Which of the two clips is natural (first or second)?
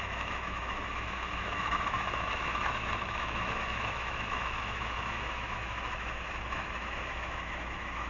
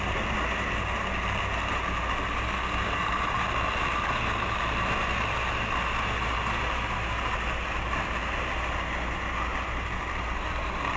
second